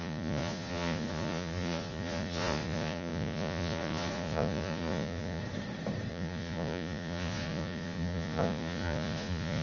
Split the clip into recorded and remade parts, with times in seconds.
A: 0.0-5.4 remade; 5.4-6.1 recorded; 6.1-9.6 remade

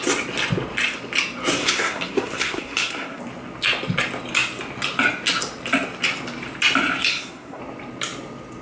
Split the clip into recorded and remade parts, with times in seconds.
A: 0.0-1.6 recorded; 1.6-3.2 remade; 3.2-7.1 recorded; 7.1-7.6 remade; 7.6-8.6 recorded

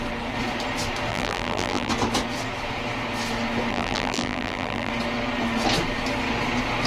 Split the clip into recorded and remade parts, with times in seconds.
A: 0.0-1.1 recorded; 1.1-1.9 remade; 1.9-3.7 recorded; 3.7-4.9 remade; 4.9-6.9 recorded

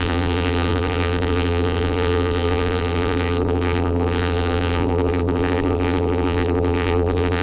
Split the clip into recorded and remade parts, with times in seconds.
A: 0.0-7.4 remade

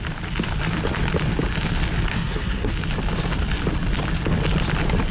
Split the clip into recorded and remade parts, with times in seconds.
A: 0.0-2.1 recorded; 2.1-2.7 remade; 2.7-5.1 recorded

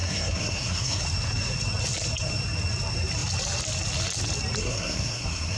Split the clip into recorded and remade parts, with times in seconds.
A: 0.0-1.0 remade; 1.0-4.6 recorded; 4.6-5.6 remade

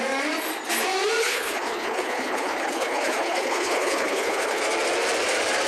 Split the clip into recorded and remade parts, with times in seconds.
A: 0.0-1.2 recorded; 1.2-4.6 remade; 4.6-5.7 recorded

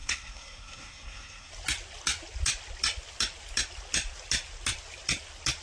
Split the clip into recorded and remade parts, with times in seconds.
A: 0.0-1.5 remade; 1.5-5.6 recorded